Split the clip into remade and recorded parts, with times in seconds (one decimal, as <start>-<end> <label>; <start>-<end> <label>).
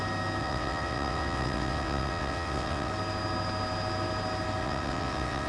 0.0-0.4 recorded; 0.4-2.9 remade; 2.9-4.6 recorded; 4.6-5.5 remade